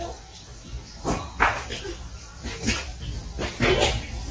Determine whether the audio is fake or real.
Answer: real